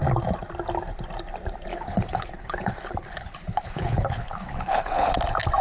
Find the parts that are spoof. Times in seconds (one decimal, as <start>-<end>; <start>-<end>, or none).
1.7-5.1

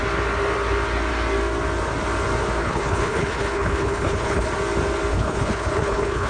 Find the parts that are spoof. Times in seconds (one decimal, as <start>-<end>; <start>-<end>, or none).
2.6-4.5; 5.1-6.3

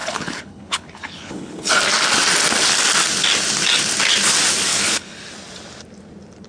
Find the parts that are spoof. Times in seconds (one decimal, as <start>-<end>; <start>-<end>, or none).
0.0-1.8; 4.7-5.2

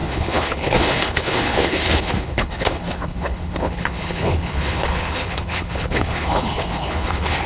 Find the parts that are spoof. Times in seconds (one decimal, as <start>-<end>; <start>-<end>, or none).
0.0-7.5

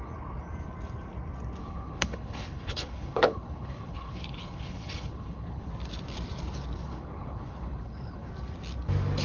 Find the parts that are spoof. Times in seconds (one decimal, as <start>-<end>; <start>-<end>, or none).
1.6-5.7; 6.8-8.3